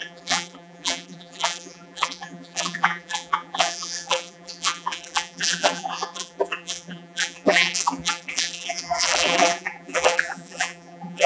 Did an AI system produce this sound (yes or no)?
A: yes